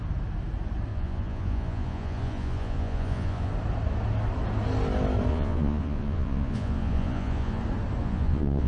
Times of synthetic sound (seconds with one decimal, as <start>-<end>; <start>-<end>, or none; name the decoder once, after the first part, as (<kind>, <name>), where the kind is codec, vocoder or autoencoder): 0.9-3.5 (vocoder, Vocos); 5.3-7.6; 8.0-8.7